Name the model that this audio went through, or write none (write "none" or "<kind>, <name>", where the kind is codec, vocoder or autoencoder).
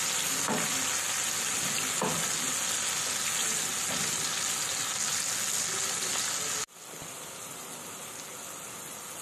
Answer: none